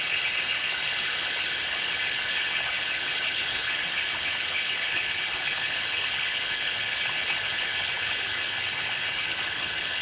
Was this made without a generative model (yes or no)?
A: no